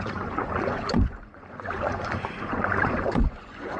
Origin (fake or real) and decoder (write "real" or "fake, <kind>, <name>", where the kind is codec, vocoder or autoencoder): fake, vocoder, Vocos